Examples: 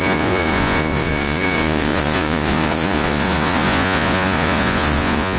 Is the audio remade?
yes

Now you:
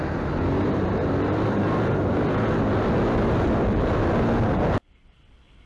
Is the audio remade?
no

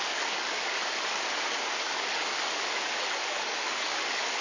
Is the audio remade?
yes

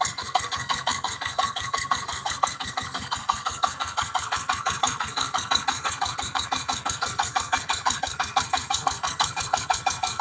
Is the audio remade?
yes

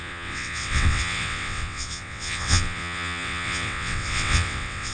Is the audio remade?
yes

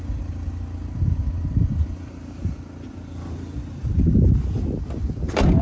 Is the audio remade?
no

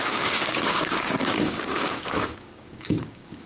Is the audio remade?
yes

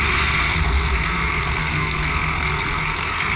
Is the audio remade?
yes